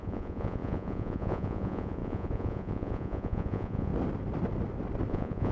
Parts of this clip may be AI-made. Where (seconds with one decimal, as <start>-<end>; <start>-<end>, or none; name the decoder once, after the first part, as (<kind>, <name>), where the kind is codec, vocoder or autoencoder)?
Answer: 0.0-3.9 (vocoder, Vocos); 5.1-5.5